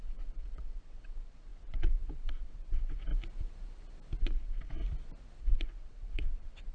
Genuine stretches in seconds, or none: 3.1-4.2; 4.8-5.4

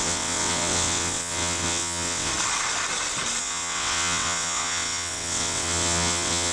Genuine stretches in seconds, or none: 2.3-3.4

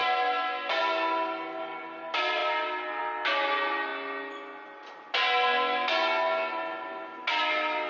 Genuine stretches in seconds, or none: 0.0-7.9

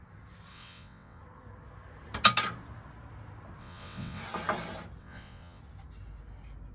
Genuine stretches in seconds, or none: 0.0-0.5; 1.2-3.6; 4.2-5.0; 5.6-6.7

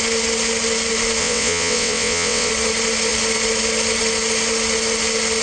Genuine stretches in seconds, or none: 0.0-1.2; 2.5-5.4